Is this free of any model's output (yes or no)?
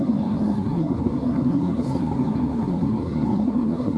no